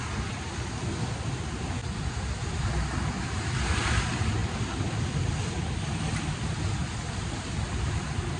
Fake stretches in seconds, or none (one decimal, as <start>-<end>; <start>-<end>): 4.4-6.3; 6.8-8.4